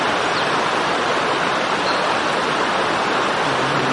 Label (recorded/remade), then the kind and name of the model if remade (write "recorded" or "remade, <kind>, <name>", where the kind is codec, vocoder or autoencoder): recorded